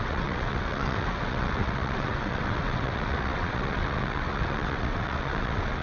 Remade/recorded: remade